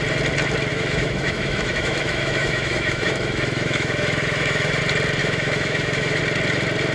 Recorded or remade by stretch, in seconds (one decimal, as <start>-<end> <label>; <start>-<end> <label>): 0.0-0.7 recorded; 0.7-4.8 remade; 4.8-5.2 recorded; 5.2-6.2 remade; 6.2-6.9 recorded